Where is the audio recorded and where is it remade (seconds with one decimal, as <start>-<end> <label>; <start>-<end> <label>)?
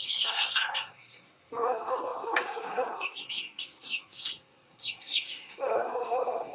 0.0-6.5 remade